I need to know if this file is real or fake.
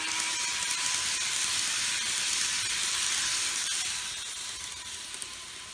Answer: real